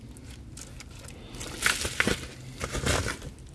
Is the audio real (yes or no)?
yes